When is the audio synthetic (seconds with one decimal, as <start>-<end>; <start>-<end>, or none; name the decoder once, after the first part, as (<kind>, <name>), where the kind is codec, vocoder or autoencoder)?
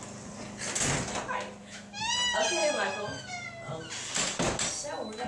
1.6-2.1 (autoencoder, DAC-VAE); 2.6-3.2